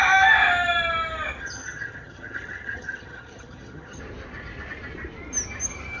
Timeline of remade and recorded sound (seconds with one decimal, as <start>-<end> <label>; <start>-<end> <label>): 0.0-1.4 recorded; 1.4-4.0 remade; 4.0-6.0 recorded